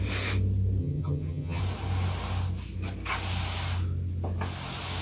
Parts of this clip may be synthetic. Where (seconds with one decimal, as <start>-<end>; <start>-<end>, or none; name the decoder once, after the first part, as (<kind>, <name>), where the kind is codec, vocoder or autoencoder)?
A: 0.8-1.6 (vocoder, HiFi-GAN)